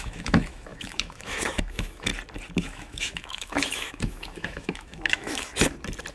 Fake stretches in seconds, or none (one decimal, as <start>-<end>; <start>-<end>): 0.0-2.1; 2.6-5.5